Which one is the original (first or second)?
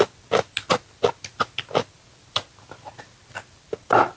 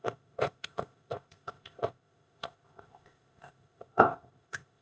first